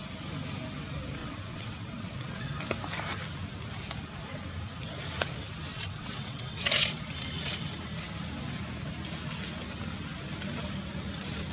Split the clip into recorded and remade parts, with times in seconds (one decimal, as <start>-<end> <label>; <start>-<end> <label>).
0.0-1.2 recorded; 1.2-2.5 remade; 2.5-5.7 recorded; 5.7-7.0 remade; 7.0-11.5 recorded